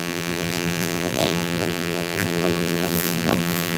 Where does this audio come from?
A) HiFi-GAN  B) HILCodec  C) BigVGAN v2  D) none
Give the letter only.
C